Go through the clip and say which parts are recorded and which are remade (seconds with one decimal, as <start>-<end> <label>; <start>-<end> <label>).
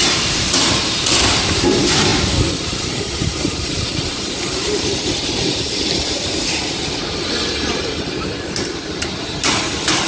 0.0-10.1 remade